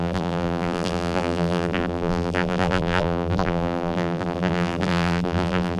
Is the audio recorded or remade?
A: remade